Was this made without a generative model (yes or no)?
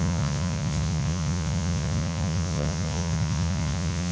no